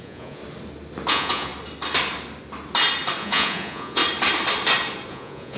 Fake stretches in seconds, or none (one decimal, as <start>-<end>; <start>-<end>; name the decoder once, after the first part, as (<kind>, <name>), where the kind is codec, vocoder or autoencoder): 0.0-0.4 (vocoder, Vocos); 1.1-1.5; 3.2-4.0; 5.1-5.6